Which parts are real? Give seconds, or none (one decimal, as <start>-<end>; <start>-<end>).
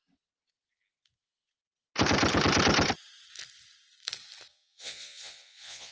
0.0-4.5